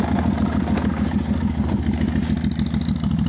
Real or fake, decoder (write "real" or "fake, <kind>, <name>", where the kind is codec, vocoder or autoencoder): real